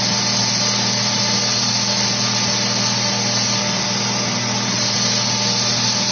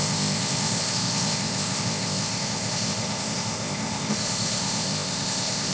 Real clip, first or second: first